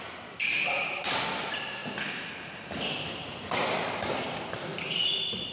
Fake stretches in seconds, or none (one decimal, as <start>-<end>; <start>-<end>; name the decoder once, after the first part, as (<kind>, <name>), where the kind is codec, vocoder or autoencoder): 0.4-1.0 (vocoder, BigVGAN v2)

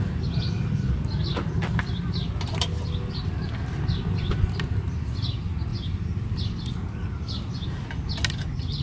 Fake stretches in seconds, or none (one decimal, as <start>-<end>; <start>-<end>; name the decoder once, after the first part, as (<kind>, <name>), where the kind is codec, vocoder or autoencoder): 5.7-6.8 (vocoder, BigVGAN v2)

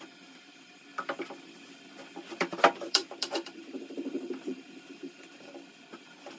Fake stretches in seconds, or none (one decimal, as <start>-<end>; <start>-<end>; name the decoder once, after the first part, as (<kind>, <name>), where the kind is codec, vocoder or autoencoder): 0.0-0.9 (vocoder, BigVGAN v2); 2.4-5.5; 6.0-6.4

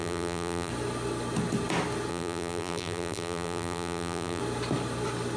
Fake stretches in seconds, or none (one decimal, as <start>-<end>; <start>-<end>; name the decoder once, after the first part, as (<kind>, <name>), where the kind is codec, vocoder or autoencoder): 0.0-0.7 (vocoder, BigVGAN v2); 2.1-4.4

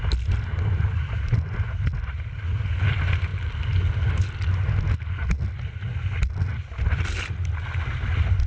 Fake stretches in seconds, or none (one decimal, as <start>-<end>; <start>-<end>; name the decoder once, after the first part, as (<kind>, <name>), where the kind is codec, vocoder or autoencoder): none

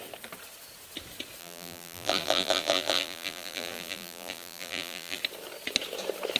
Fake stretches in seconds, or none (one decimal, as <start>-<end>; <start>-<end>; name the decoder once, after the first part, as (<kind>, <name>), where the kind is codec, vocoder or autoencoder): 1.4-5.2 (vocoder, BigVGAN v2)

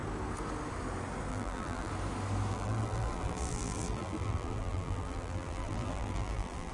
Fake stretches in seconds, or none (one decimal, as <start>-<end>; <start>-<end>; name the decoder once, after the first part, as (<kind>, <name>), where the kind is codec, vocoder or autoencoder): 1.3-1.9 (vocoder, BigVGAN v2); 2.5-6.7